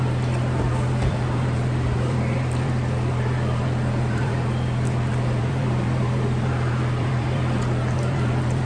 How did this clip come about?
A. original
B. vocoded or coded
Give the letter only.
B